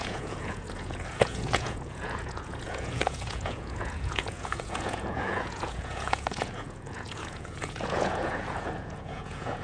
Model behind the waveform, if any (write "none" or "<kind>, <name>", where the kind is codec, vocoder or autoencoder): vocoder, Vocos